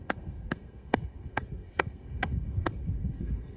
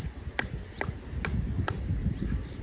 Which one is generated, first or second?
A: first